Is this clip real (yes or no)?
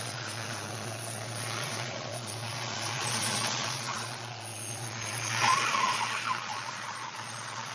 no